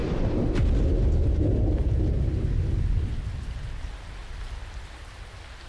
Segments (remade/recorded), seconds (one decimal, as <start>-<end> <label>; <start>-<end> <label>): 0.0-5.7 recorded